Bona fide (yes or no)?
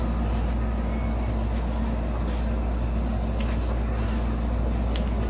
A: yes